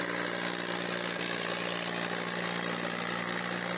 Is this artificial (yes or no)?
no